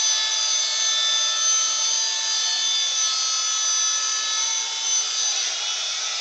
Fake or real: real